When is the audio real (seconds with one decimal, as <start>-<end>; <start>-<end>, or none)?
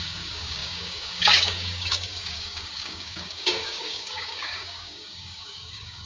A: none